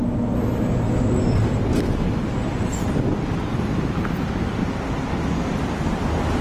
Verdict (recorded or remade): recorded